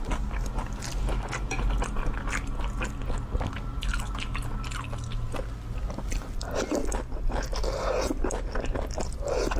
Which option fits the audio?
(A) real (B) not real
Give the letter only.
A